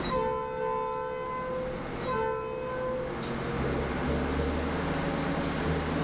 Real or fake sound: real